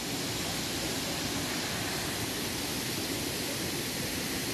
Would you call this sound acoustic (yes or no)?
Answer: yes